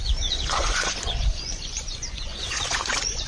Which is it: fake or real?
fake